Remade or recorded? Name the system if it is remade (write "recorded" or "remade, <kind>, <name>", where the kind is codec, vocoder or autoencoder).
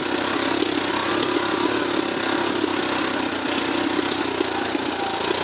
recorded